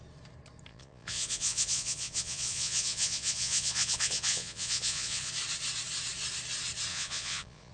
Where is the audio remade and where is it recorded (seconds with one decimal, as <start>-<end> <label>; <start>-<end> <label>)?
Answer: 0.0-0.7 recorded; 0.7-5.3 remade; 5.3-6.9 recorded; 6.9-7.7 remade